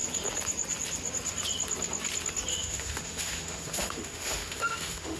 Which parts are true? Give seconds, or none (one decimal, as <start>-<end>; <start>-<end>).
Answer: 0.0-2.5